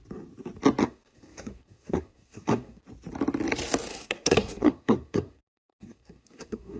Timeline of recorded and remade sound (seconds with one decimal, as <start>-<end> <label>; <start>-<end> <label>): 0.0-0.8 recorded; 0.8-2.8 remade; 2.8-3.9 recorded; 3.9-6.8 remade